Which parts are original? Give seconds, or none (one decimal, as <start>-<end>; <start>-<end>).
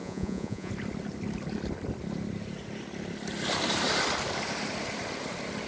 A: 0.7-5.7